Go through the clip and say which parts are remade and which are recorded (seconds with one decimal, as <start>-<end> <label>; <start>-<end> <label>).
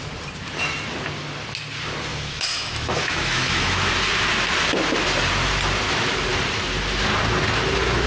0.0-2.1 recorded; 2.1-3.9 remade; 3.9-8.1 recorded